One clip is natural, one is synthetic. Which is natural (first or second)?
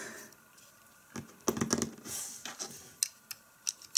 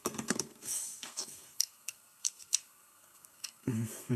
first